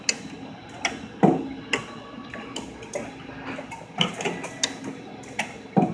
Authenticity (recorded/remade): recorded